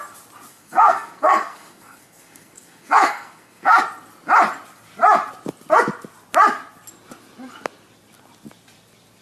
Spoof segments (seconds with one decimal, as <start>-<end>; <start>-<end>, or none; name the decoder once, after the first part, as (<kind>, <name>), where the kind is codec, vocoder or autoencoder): 0.5-3.8 (codec, SNAC)